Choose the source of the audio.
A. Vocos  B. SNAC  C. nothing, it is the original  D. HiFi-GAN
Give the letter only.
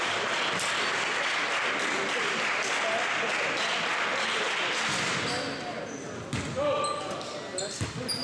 C